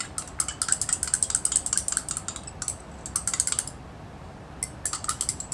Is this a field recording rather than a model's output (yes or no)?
yes